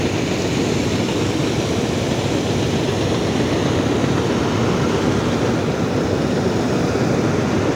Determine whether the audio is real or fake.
real